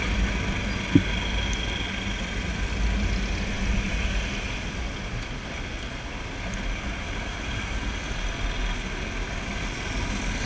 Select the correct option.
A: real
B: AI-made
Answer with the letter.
A